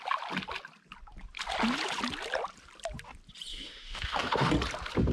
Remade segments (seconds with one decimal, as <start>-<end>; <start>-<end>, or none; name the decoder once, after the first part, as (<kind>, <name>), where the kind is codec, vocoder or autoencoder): 3.5-4.5 (autoencoder, DAC-VAE)